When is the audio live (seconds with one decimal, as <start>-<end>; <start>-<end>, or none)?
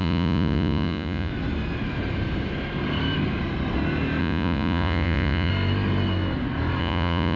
1.3-4.2; 5.5-6.8